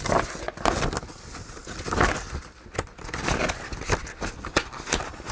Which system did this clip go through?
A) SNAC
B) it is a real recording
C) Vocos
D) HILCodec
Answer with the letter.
B